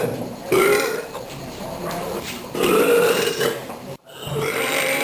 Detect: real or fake fake